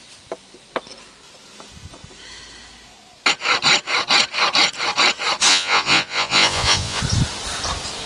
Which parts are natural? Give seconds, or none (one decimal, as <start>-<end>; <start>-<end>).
0.0-5.5; 7.0-8.1